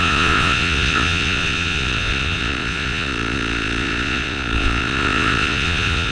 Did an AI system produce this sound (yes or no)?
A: yes